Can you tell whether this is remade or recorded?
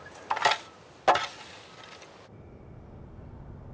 recorded